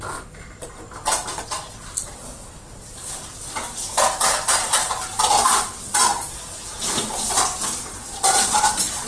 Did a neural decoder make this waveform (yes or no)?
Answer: no